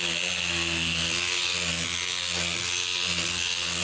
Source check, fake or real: real